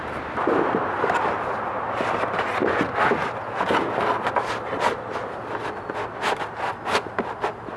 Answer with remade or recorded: recorded